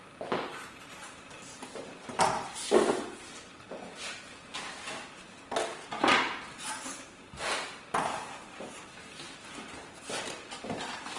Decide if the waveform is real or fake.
real